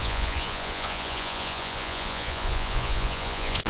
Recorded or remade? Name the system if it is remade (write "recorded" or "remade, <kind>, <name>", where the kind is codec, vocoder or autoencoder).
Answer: remade, vocoder, Vocos